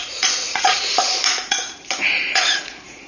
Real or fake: fake